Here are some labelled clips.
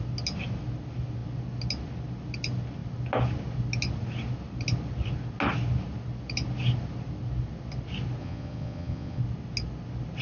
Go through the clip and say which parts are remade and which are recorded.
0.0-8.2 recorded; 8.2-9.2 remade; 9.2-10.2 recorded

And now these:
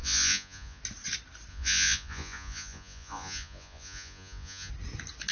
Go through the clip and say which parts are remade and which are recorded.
0.0-0.8 remade; 0.8-1.5 recorded; 1.5-4.7 remade; 4.7-5.3 recorded

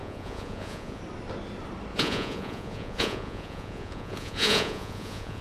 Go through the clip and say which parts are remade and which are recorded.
0.0-1.0 remade; 1.0-1.9 recorded; 1.9-5.4 remade

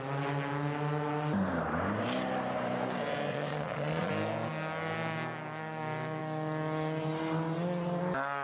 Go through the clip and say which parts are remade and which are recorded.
0.0-3.3 recorded; 3.3-4.1 remade; 4.1-8.4 recorded